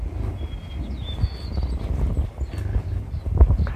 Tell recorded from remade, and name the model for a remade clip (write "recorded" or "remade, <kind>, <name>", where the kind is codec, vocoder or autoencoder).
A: recorded